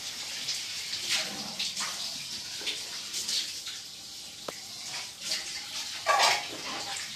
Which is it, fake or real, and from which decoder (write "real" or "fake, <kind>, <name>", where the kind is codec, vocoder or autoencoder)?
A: real